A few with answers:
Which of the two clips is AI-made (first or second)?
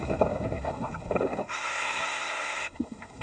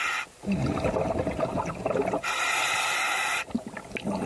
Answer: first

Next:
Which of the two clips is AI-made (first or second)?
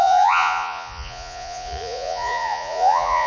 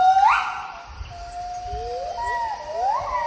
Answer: first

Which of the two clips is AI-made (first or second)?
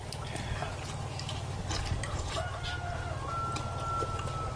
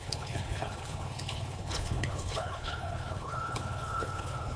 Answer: second